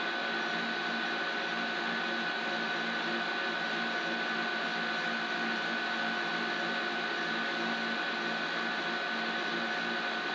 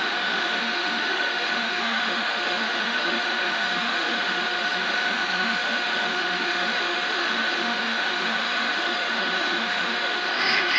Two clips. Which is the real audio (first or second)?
first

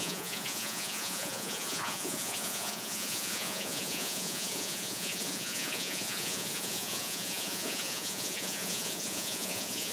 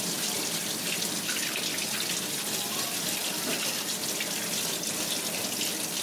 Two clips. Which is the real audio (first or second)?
second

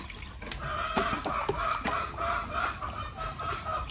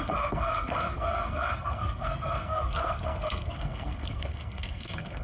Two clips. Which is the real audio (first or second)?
first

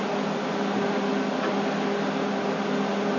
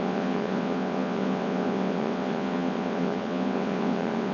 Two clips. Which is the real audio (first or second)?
first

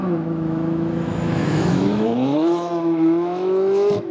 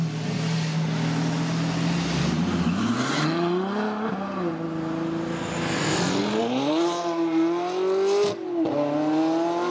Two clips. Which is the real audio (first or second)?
second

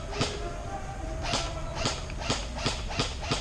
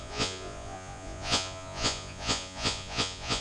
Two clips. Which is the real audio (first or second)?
first